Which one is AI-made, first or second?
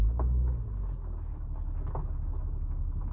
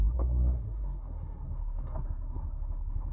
second